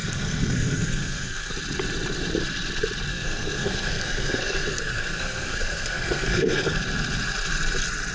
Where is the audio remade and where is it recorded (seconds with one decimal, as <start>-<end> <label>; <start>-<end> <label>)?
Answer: 0.0-1.5 remade; 1.5-3.1 recorded; 3.1-6.8 remade; 6.8-8.1 recorded